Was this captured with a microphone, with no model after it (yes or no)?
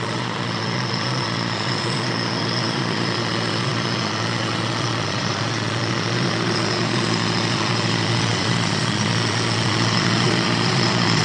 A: no